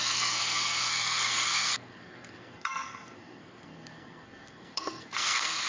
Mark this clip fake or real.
fake